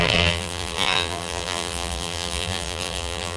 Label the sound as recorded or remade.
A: remade